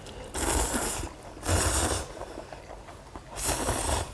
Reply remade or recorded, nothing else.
recorded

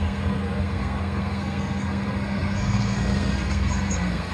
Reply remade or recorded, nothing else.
remade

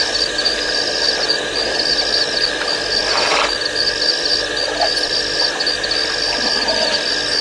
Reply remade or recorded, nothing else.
recorded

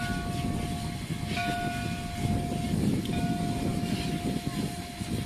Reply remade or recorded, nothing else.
recorded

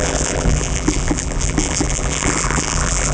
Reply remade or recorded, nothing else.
remade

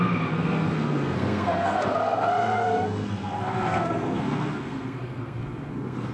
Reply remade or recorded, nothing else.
remade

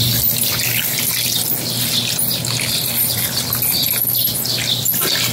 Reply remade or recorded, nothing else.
recorded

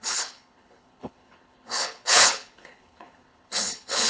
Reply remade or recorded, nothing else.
remade